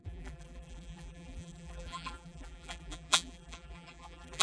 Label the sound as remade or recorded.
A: remade